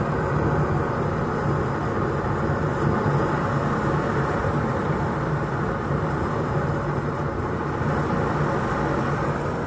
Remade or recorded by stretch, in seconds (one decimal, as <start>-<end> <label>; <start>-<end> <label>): 0.0-4.4 recorded; 4.4-7.6 remade; 7.6-9.7 recorded

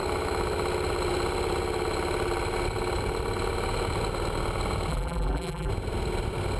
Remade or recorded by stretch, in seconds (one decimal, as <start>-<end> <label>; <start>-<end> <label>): 0.0-4.9 recorded; 4.9-5.7 remade; 5.7-6.6 recorded

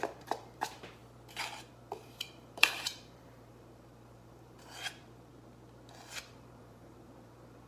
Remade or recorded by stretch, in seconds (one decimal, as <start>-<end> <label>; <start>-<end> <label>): 0.0-1.0 remade; 1.0-1.7 recorded; 1.7-5.3 remade; 5.3-6.2 recorded; 6.2-7.7 remade

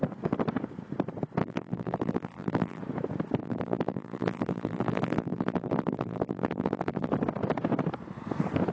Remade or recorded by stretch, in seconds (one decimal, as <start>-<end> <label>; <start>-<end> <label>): 0.0-1.4 recorded; 1.4-2.8 remade; 2.8-3.4 recorded; 3.4-7.1 remade; 7.1-8.7 recorded

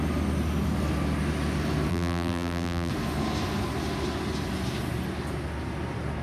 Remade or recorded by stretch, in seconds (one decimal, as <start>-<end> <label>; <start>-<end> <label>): 0.0-1.9 recorded; 1.9-2.9 remade; 2.9-6.2 recorded

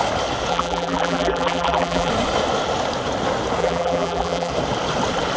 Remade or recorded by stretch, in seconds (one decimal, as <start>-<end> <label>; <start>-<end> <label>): 0.0-0.5 recorded; 0.5-2.1 remade; 2.1-3.6 recorded; 3.6-4.5 remade; 4.5-5.4 recorded